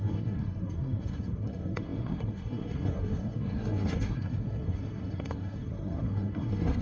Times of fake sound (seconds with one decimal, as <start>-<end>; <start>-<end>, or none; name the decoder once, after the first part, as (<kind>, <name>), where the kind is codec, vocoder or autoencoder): 0.0-6.8 (codec, SNAC)

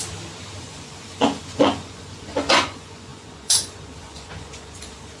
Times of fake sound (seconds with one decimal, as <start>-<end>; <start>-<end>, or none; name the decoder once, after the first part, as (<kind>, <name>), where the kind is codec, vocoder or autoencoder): 0.6-5.2 (vocoder, Vocos)

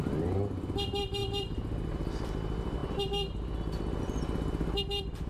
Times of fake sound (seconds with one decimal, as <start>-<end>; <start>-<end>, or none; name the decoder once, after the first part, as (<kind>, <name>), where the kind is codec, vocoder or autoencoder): none

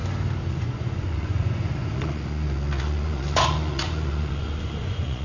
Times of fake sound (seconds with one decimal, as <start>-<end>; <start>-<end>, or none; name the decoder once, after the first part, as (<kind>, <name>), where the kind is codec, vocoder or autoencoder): 0.5-5.2 (vocoder, Vocos)

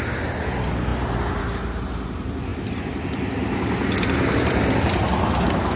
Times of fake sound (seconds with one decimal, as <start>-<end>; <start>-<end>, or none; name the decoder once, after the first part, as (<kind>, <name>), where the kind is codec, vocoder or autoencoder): none

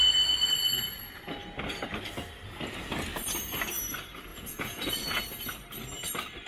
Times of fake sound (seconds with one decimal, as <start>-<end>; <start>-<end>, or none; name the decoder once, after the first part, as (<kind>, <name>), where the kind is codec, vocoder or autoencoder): 4.3-5.2 (vocoder, Vocos)